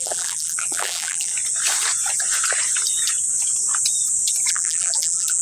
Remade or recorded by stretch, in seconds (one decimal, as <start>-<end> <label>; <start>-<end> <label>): 0.0-1.3 remade; 1.3-4.5 recorded; 4.5-5.4 remade